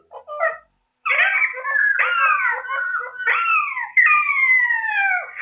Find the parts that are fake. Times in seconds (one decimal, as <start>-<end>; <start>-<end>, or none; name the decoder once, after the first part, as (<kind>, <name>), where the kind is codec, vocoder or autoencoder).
0.9-1.4 (vocoder, BigVGAN v2); 1.9-4.7